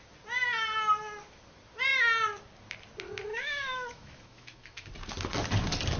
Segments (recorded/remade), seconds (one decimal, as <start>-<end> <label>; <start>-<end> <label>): 0.0-3.3 recorded; 3.3-4.9 remade; 4.9-6.0 recorded